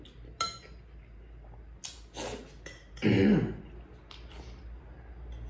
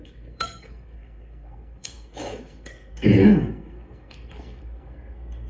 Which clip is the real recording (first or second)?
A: first